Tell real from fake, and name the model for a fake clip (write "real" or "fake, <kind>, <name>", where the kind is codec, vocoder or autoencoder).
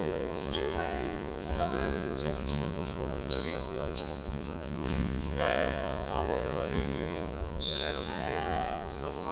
fake, vocoder, Vocos